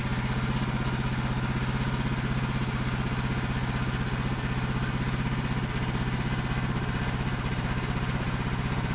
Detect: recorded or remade recorded